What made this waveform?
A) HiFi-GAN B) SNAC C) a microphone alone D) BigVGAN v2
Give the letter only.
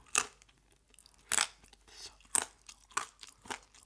C